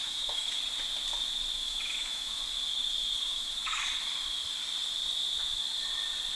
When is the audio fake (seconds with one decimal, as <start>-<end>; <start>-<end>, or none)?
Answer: 0.0-0.6; 1.6-2.4; 3.2-3.8